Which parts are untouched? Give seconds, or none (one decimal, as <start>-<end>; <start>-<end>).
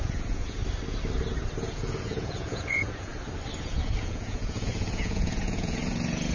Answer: 0.6-1.7; 3.1-3.6